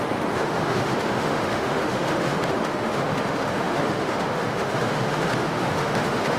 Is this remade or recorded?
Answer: remade